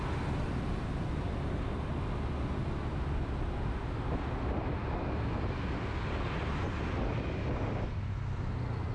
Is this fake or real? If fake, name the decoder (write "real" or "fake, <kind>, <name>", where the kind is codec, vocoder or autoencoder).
real